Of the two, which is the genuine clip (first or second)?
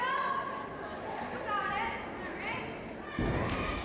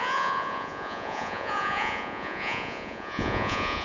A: first